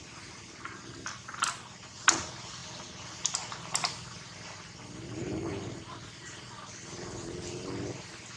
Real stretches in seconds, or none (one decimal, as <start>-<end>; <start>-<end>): 0.0-8.4